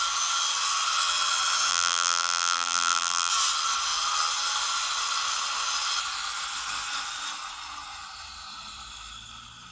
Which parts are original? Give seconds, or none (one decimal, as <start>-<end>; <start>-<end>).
0.0-1.7; 3.3-9.7